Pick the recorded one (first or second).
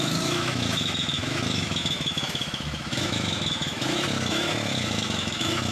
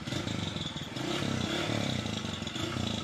second